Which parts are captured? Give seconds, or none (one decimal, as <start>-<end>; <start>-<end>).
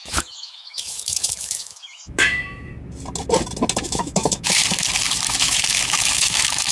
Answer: 2.7-3.8; 4.6-5.4